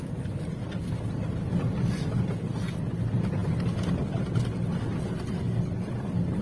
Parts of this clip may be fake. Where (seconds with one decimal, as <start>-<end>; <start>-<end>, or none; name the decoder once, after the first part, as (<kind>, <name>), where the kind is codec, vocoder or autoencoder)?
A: none